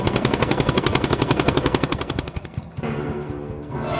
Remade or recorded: remade